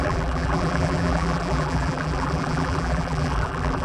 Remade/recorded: remade